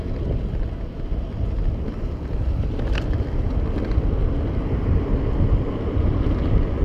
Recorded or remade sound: recorded